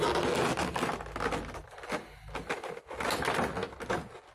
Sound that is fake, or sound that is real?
real